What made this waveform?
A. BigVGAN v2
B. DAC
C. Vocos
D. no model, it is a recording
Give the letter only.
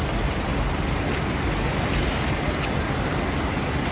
D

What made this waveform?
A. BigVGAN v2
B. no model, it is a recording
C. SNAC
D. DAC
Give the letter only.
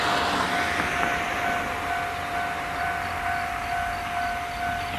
B